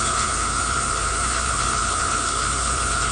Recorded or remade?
remade